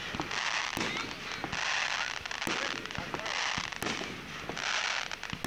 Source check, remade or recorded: recorded